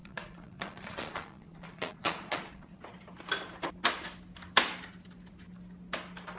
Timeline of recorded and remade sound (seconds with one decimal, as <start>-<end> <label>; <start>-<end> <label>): 0.0-2.8 remade; 2.8-6.4 recorded